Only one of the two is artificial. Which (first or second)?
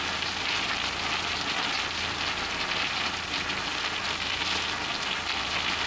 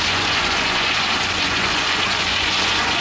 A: second